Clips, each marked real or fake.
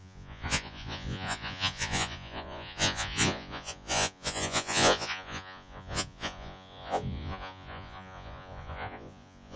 fake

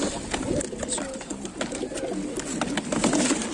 real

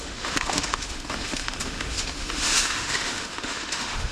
fake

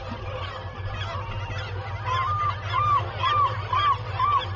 real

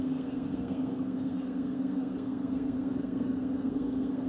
fake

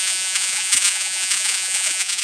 fake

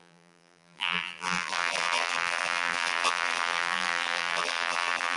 fake